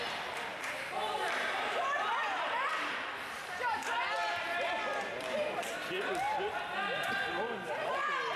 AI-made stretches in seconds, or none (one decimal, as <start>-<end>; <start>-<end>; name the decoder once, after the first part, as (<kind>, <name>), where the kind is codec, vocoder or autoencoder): none